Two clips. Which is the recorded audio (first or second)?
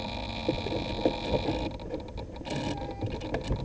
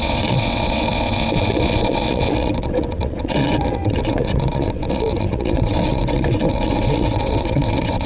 first